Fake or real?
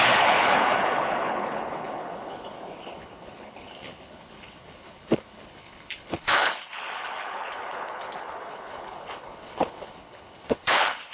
fake